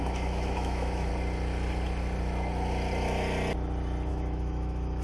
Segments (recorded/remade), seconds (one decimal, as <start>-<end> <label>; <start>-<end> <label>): 0.0-1.1 remade; 1.1-4.1 recorded; 4.1-5.0 remade